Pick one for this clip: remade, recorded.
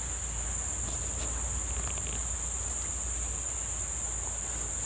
recorded